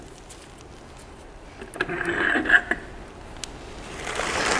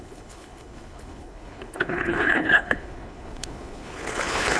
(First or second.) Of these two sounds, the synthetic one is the second